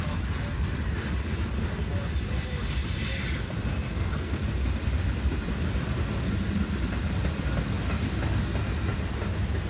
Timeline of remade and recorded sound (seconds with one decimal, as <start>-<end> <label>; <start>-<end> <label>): 0.0-3.9 recorded; 3.9-4.4 remade; 4.4-9.7 recorded